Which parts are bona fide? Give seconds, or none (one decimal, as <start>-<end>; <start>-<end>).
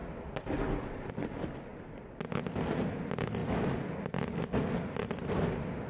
1.1-5.9